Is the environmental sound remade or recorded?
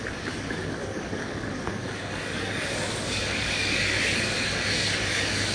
remade